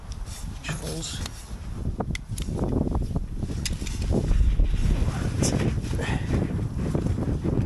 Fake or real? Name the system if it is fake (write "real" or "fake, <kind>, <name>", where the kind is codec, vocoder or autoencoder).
real